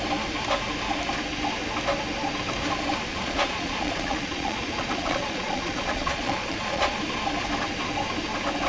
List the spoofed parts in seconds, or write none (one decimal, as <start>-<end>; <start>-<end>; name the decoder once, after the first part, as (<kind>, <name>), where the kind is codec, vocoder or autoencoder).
3.1-7.0 (vocoder, Vocos)